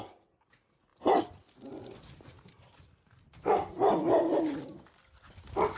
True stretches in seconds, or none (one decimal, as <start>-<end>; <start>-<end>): 0.0-5.8

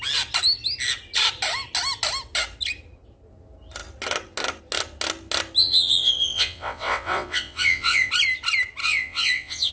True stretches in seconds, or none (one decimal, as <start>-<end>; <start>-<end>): 0.0-5.6; 8.1-8.8